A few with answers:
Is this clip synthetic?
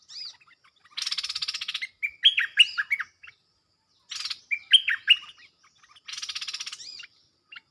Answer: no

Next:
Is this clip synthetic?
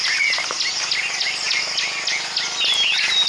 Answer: no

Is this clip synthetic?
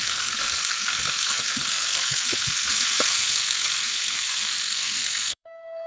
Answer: yes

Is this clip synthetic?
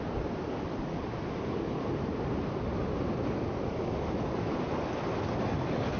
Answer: no